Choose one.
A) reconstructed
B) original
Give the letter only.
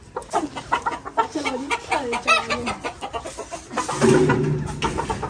B